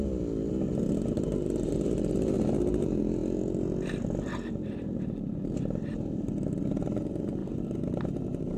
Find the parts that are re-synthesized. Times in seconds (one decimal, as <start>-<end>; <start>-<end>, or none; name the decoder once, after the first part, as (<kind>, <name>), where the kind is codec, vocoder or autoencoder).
none